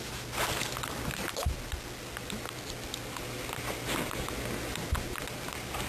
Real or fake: real